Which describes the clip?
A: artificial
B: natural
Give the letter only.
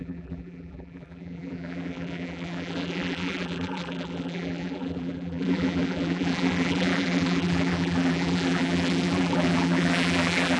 A